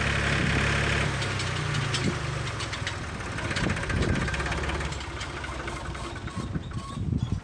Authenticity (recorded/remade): recorded